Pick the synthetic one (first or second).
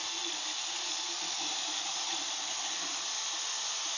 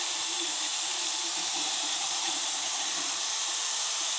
second